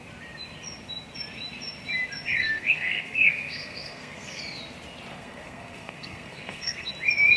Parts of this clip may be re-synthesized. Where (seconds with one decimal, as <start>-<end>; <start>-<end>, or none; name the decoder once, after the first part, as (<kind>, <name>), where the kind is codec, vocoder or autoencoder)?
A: 2.4-4.4 (codec, SNAC); 5.1-6.9